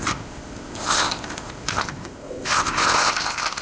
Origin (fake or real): fake